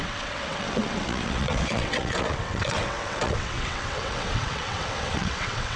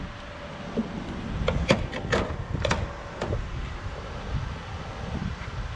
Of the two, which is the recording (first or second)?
second